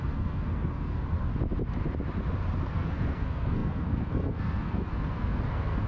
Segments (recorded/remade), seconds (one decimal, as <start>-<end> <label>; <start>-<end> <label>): 0.0-1.3 remade; 1.3-2.7 recorded; 2.7-5.9 remade